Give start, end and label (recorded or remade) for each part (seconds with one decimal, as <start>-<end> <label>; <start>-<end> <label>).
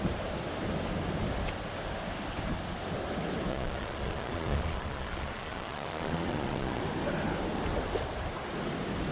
0.0-3.5 recorded; 3.5-6.8 remade; 6.8-9.1 recorded